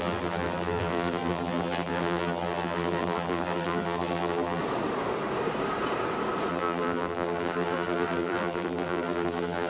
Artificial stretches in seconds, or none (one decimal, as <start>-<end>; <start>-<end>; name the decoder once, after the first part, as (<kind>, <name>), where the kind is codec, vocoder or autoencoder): 0.0-4.6 (vocoder, BigVGAN v2); 6.5-9.7